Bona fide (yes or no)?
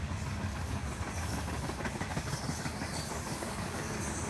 no